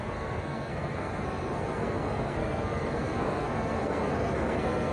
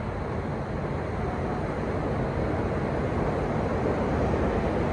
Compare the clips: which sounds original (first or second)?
second